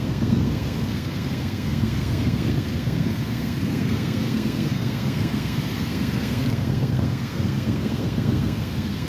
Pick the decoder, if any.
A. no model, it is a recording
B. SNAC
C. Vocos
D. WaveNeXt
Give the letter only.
B